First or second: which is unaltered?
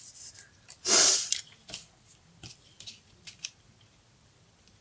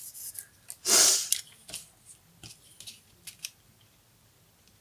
second